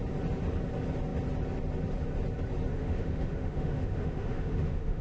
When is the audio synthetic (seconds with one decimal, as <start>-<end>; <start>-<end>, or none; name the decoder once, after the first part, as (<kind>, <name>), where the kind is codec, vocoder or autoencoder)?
2.7-5.0 (autoencoder, DAC-VAE)